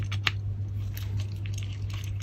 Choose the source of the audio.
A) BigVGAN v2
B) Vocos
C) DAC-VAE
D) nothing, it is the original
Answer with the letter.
D